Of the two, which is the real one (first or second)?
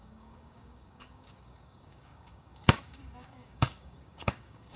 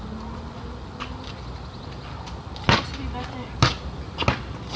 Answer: second